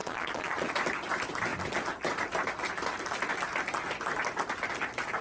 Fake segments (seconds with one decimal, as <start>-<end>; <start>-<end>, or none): 0.0-0.7